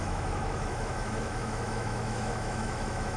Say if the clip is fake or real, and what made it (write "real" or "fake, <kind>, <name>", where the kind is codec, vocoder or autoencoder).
fake, autoencoder, DAC-VAE